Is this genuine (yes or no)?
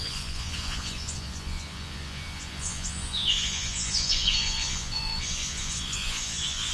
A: no